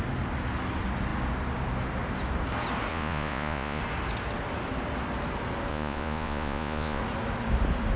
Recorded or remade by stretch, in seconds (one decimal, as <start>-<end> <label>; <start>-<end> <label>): 0.0-2.9 recorded; 2.9-3.8 remade; 3.8-5.7 recorded; 5.7-7.0 remade; 7.0-8.0 recorded